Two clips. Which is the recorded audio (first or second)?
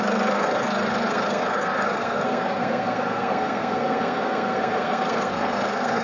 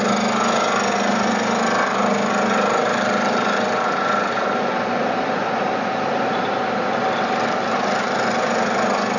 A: second